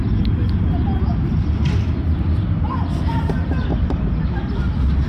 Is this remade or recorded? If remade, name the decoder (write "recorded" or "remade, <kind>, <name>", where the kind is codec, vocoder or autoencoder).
remade, vocoder, BigVGAN v2